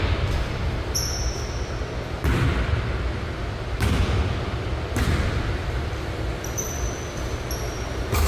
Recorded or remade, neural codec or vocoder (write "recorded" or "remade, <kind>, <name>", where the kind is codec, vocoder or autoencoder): recorded